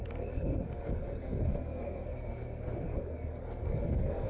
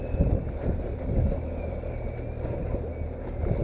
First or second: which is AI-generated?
first